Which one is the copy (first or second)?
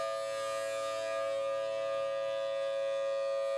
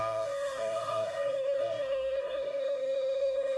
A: second